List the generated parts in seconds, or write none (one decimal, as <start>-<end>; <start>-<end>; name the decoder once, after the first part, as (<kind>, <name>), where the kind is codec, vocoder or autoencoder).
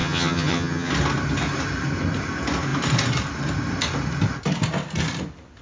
0.0-0.9 (vocoder, HiFi-GAN)